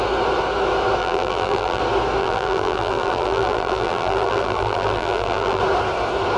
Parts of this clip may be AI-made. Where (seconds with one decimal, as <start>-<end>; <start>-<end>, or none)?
1.0-1.8; 2.2-5.6